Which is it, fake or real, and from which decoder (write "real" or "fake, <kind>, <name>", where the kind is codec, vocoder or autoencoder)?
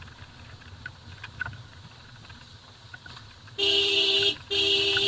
real